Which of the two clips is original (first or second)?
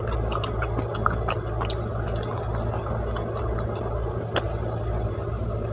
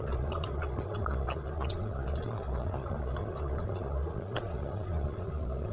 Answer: first